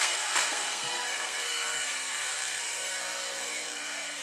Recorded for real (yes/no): no